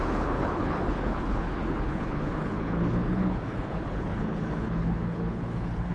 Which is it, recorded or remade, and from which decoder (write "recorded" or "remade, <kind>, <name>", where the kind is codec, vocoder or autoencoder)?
remade, codec, HILCodec